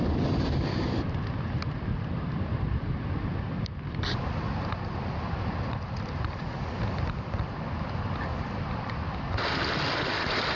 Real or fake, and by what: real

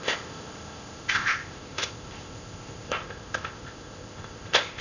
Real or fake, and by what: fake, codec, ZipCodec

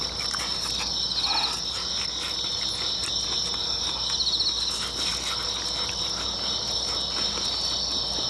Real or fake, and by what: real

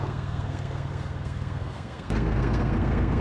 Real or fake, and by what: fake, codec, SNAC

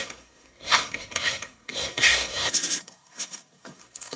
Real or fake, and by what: fake, codec, SNAC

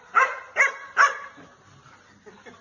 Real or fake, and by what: real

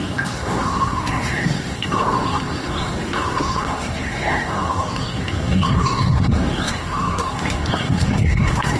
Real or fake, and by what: fake, codec, SNAC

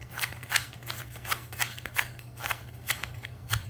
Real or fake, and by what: fake, codec, SNAC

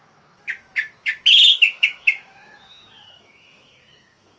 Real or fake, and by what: fake, autoencoder, DAC-VAE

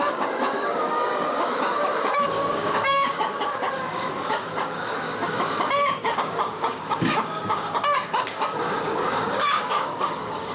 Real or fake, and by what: fake, codec, DAC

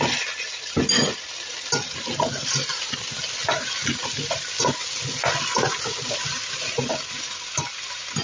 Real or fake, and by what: real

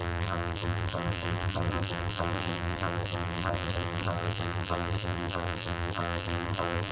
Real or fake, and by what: fake, vocoder, BigVGAN v2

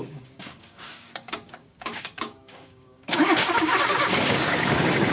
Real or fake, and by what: fake, codec, DAC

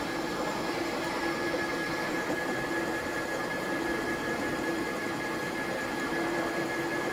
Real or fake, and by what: fake, vocoder, BigVGAN v2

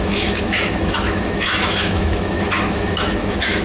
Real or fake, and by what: fake, autoencoder, DAC-VAE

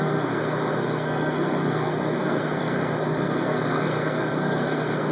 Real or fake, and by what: fake, codec, SNAC